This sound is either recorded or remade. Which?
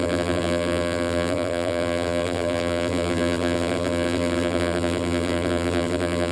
remade